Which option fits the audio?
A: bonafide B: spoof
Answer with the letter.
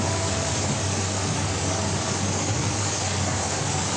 B